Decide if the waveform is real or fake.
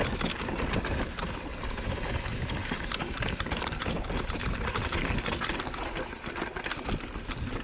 real